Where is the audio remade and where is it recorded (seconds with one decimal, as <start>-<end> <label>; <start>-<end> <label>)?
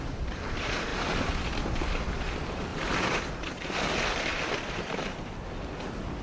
0.0-2.7 recorded; 2.7-3.7 remade; 3.7-4.3 recorded; 4.3-5.3 remade; 5.3-6.2 recorded